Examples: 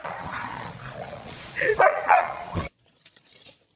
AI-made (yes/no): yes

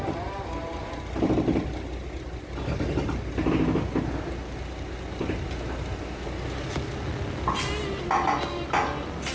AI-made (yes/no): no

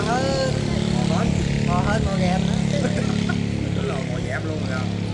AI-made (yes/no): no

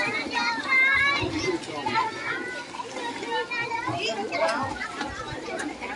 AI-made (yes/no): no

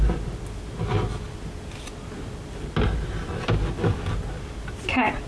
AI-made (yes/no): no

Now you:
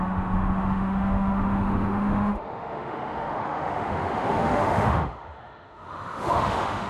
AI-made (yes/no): yes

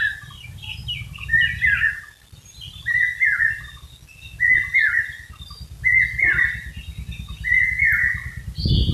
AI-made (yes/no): no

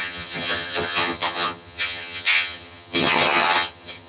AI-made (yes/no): yes